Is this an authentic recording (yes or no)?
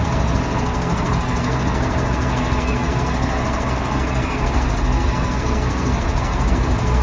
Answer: no